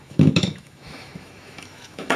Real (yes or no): no